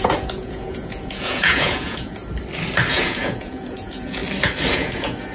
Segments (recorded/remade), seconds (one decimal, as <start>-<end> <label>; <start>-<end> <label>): 0.0-2.2 remade; 2.2-2.9 recorded; 2.9-4.2 remade; 4.2-4.7 recorded; 4.7-5.3 remade